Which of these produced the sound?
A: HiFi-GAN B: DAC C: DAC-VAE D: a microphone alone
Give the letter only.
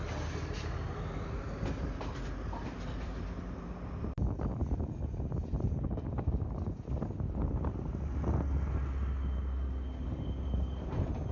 D